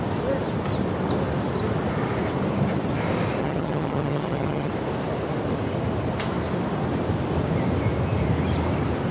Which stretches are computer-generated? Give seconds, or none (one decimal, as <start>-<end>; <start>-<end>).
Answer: 3.4-4.7